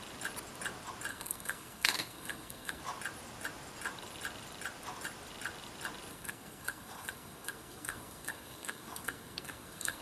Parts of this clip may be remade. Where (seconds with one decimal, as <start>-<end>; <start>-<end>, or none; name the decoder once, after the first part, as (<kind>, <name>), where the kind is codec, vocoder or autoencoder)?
1.1-2.8 (codec, SNAC); 6.1-10.0